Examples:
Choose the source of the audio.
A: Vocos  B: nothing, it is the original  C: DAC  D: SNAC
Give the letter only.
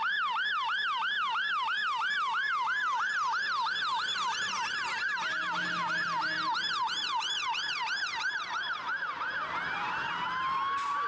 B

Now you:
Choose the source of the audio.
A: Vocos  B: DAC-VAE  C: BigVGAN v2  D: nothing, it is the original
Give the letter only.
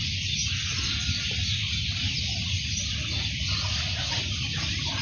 D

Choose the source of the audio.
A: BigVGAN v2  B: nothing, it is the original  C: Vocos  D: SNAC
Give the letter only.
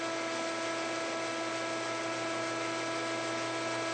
B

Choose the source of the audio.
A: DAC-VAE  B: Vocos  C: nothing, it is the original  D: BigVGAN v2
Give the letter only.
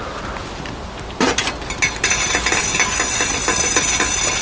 C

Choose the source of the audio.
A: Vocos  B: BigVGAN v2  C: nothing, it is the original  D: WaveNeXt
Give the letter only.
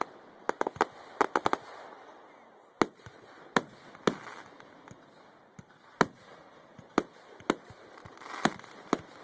C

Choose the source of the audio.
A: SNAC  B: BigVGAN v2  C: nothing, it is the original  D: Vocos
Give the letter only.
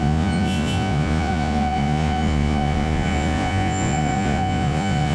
D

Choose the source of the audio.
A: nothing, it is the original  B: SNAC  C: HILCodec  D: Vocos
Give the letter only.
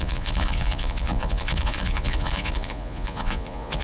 D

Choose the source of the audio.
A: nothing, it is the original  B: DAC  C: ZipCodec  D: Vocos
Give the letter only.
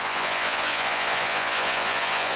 D